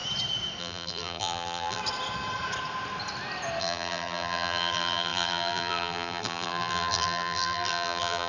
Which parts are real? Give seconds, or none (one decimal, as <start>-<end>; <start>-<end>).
0.0-0.6; 1.8-3.6

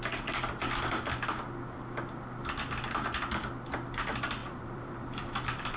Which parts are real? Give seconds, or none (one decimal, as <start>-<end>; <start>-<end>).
0.0-4.4

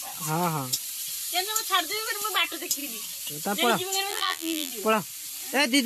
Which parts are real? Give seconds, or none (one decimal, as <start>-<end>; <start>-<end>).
0.0-4.1; 4.7-5.9

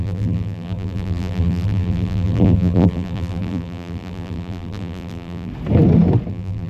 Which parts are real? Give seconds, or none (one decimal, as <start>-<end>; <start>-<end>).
5.5-6.3

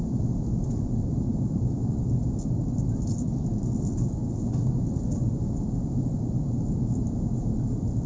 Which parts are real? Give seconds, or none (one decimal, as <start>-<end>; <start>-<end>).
4.2-8.1

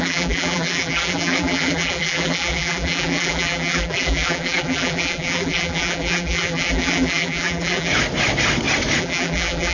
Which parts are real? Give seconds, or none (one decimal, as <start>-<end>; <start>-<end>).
7.9-9.0

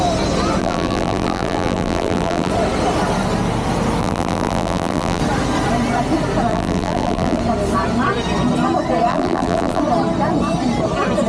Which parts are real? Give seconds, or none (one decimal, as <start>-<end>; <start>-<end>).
0.0-0.6; 2.5-4.0; 5.2-6.5; 7.4-9.1; 9.8-11.3